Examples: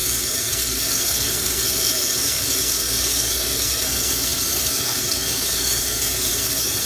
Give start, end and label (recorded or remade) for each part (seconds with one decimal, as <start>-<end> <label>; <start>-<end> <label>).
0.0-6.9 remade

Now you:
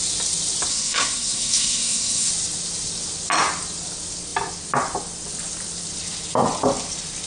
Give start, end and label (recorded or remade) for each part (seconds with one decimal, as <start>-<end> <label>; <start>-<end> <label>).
0.0-0.7 recorded; 0.7-2.3 remade; 2.3-7.3 recorded

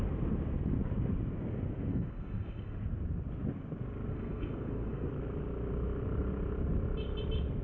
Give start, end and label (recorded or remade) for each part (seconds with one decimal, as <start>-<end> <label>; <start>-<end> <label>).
0.0-1.9 recorded; 1.9-2.8 remade; 2.8-4.1 recorded; 4.1-5.1 remade; 5.1-7.6 recorded